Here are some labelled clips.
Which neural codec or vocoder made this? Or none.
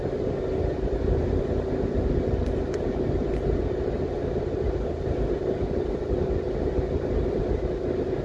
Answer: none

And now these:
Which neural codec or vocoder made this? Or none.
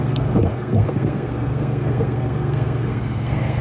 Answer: codec, SNAC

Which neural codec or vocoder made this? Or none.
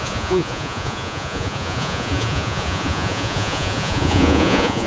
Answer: vocoder, Vocos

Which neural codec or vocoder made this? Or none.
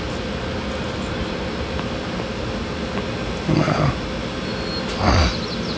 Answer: none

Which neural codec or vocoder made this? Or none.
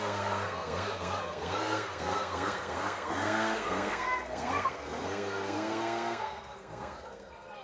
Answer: codec, SNAC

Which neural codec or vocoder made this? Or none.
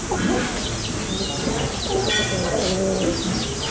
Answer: none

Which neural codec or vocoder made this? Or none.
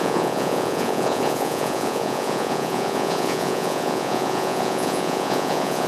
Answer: vocoder, Vocos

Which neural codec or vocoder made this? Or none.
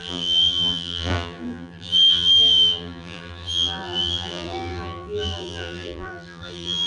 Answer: vocoder, BigVGAN v2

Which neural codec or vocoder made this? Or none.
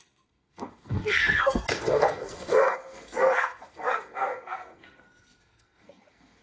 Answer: codec, SNAC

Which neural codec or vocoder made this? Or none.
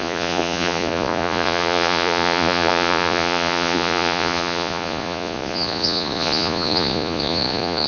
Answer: vocoder, Vocos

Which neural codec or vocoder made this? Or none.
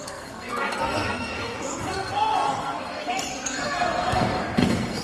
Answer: codec, SNAC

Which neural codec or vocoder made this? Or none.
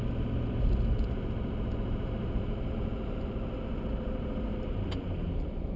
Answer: vocoder, BigVGAN v2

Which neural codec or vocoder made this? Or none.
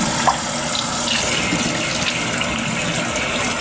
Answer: none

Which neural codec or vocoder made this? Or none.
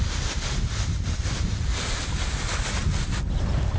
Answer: none